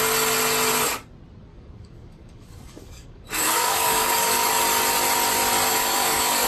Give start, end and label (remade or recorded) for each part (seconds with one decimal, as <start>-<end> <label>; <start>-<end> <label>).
0.0-1.5 recorded; 1.5-4.5 remade; 4.5-5.7 recorded; 5.7-6.5 remade